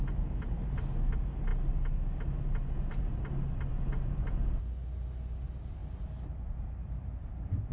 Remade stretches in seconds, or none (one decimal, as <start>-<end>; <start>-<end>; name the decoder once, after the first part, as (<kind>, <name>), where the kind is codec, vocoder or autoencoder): none